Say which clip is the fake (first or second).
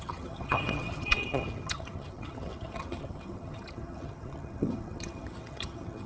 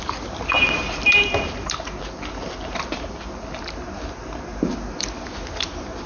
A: first